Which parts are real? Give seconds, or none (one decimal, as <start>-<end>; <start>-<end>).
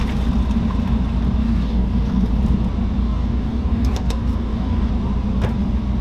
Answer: 0.0-1.4; 2.3-3.0; 4.9-6.0